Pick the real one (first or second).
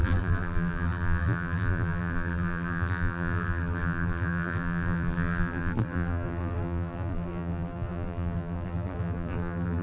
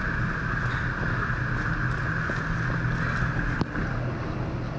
second